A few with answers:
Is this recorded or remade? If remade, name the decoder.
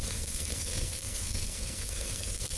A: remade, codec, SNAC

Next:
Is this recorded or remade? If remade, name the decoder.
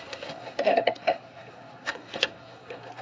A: remade, codec, SNAC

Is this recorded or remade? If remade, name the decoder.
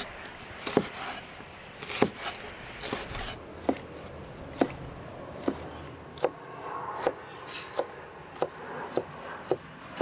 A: recorded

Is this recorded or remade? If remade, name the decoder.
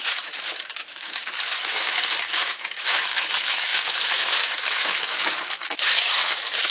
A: remade, autoencoder, DAC-VAE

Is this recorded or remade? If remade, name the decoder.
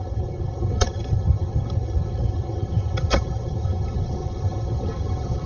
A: remade, vocoder, HiFi-GAN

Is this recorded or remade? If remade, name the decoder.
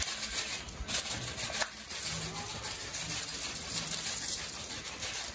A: recorded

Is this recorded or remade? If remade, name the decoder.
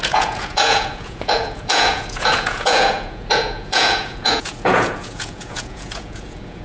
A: remade, vocoder, Vocos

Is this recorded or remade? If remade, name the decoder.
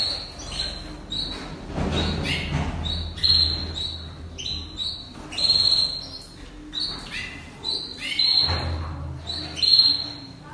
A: recorded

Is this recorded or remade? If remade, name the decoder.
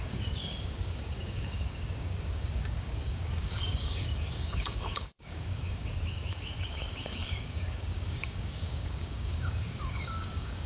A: remade, codec, DAC